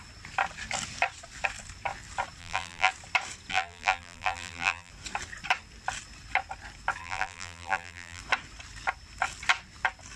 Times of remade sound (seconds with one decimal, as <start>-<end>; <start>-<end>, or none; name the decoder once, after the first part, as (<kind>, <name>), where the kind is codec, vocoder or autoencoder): 2.4-2.9 (vocoder, BigVGAN v2); 3.5-4.9; 7.0-8.2